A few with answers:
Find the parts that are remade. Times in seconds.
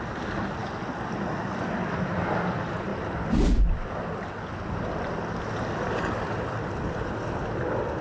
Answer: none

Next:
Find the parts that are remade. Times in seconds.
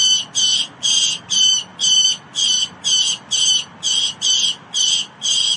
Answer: none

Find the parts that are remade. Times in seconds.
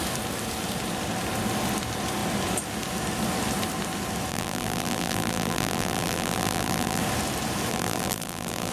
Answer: 4.3-7.0 (vocoder, BigVGAN v2); 7.7-8.7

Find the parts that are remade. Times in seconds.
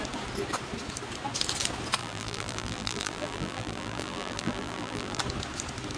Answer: 2.0-5.2 (vocoder, BigVGAN v2)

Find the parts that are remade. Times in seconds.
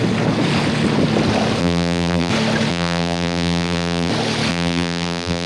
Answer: 1.6-2.3 (vocoder, BigVGAN v2); 2.7-4.1; 4.5-5.5